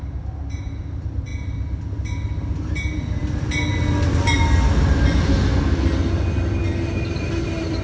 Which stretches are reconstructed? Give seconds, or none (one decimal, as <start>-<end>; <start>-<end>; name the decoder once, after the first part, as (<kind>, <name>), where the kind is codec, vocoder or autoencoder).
none